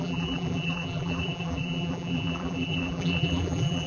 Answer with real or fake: fake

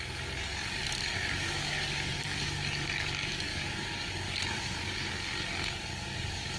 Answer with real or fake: fake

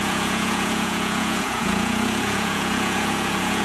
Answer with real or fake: fake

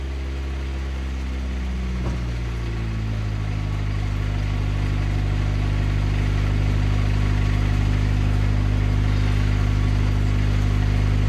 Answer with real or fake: real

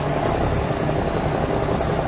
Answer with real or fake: real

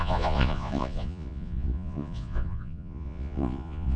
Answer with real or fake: fake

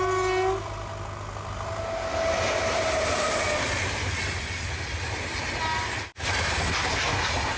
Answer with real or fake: real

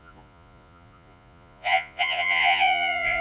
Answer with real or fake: fake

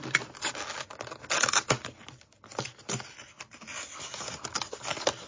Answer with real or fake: real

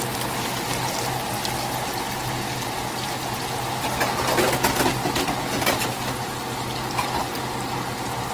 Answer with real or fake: real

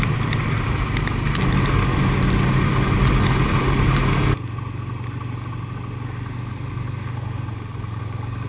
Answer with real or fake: real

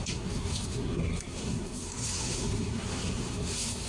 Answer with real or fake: fake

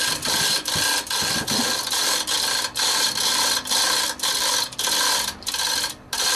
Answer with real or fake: real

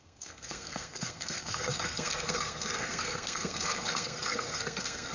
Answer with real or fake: fake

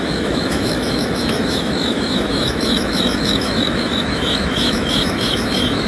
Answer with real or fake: fake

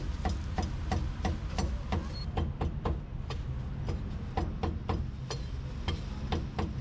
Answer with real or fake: real